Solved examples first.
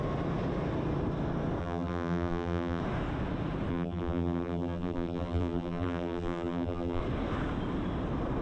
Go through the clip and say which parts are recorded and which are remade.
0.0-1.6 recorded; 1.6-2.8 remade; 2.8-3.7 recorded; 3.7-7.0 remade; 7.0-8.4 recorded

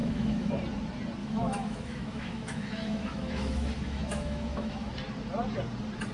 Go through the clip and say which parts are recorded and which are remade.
0.0-0.5 remade; 0.5-1.2 recorded; 1.2-4.9 remade; 4.9-6.1 recorded

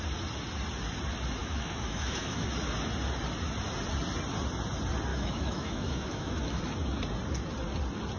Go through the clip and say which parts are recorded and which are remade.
0.0-1.4 recorded; 1.4-2.5 remade; 2.5-5.1 recorded; 5.1-6.6 remade; 6.6-8.2 recorded

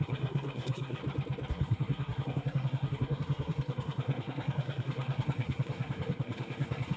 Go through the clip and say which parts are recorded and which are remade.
0.0-1.0 remade; 1.0-1.5 recorded; 1.5-7.0 remade

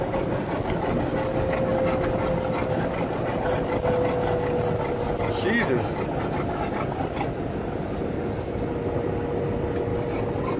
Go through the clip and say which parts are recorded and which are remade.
0.0-10.6 recorded

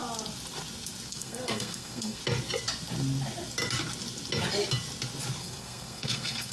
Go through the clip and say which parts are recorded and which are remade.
0.0-1.1 recorded; 1.1-2.2 remade; 2.2-5.4 recorded; 5.4-6.5 remade

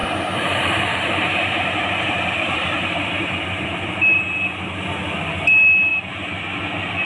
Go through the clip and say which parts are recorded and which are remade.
0.0-4.2 remade; 4.2-7.0 recorded